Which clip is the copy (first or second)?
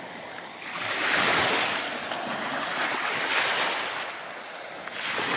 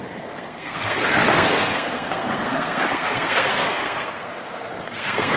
second